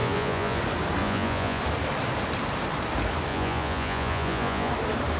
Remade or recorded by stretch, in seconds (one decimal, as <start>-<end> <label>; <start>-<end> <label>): 0.0-0.6 remade; 0.6-1.0 recorded; 1.0-1.6 remade; 1.6-3.3 recorded; 3.3-4.7 remade; 4.7-5.2 recorded